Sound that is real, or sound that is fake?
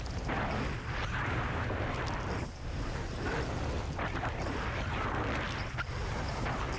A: real